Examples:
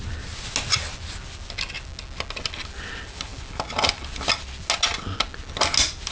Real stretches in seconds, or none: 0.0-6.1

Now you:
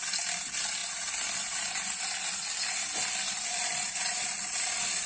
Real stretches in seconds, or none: 0.0-5.1

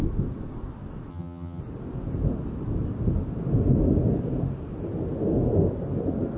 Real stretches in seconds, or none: 0.0-1.1; 1.6-6.4

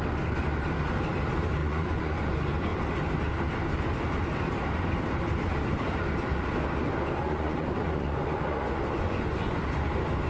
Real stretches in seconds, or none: 0.0-1.6; 2.2-7.2; 9.6-10.3

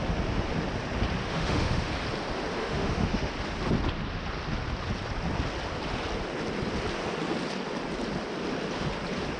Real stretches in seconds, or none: 0.0-1.2; 1.9-2.6; 3.3-9.4